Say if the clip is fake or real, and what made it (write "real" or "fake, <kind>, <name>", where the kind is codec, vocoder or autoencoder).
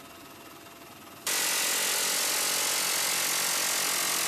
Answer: real